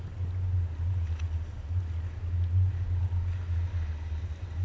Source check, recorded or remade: recorded